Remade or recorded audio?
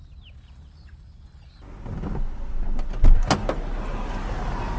recorded